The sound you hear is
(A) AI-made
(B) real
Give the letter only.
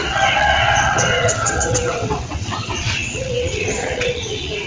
A